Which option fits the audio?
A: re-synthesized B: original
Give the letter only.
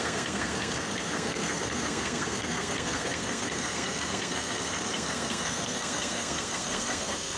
A